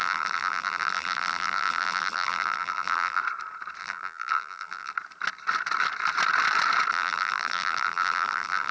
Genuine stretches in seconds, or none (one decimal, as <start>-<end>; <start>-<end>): 3.2-3.8; 4.9-6.9